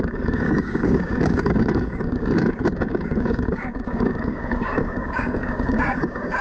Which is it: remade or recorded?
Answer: remade